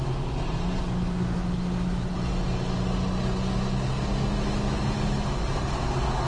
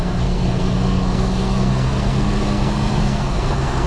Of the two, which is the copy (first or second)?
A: second